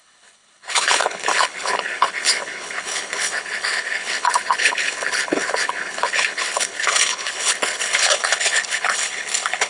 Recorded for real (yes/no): no